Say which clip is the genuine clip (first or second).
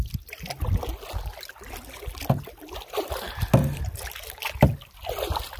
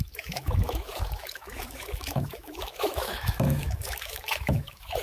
first